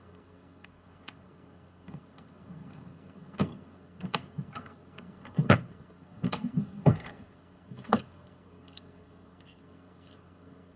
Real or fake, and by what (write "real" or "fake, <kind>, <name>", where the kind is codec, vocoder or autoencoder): fake, codec, SNAC